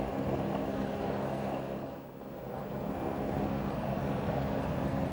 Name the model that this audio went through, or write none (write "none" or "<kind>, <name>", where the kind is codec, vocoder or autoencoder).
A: codec, SNAC